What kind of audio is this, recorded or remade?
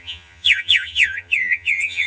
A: remade